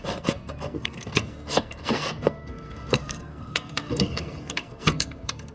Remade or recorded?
remade